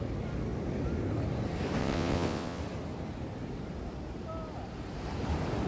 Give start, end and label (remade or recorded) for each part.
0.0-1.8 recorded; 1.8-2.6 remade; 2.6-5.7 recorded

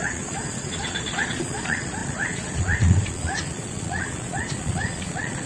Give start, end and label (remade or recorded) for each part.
0.0-5.5 remade

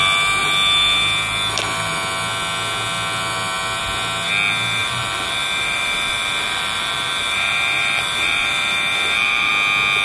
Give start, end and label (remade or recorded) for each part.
0.0-4.8 recorded; 4.8-9.5 remade; 9.5-10.0 recorded

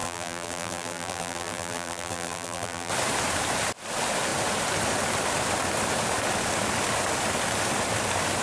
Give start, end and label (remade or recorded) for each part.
0.0-2.9 remade; 2.9-8.4 recorded

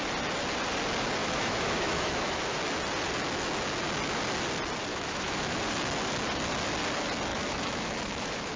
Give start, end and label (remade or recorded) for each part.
0.0-1.2 recorded; 1.2-2.6 remade; 2.6-4.9 recorded; 4.9-5.6 remade; 5.6-7.3 recorded; 7.3-8.6 remade

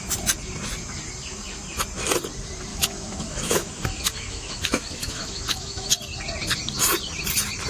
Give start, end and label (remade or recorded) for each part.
0.0-2.7 recorded; 2.7-5.9 remade; 5.9-7.7 recorded

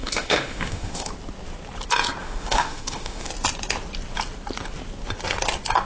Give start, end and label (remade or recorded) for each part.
0.0-1.1 remade; 1.1-2.2 recorded; 2.2-3.3 remade; 3.3-5.9 recorded

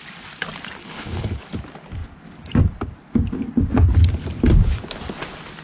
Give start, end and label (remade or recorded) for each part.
0.0-0.8 recorded; 0.8-1.4 remade; 1.4-5.6 recorded